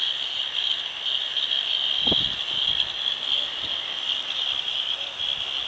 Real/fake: real